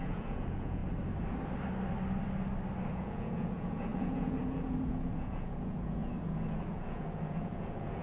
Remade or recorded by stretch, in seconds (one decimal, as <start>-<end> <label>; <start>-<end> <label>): 0.0-0.8 remade; 0.8-2.9 recorded; 2.9-8.0 remade